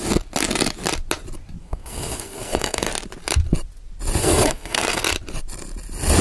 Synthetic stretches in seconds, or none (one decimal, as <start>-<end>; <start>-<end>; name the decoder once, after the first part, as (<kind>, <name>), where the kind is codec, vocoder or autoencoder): 1.6-2.9 (codec, SNAC); 4.2-5.0